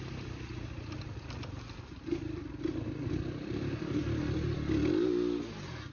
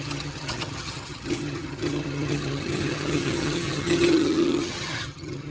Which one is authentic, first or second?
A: first